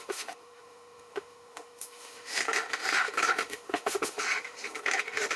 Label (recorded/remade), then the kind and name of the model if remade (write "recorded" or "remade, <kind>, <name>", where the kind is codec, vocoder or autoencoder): remade, autoencoder, DAC-VAE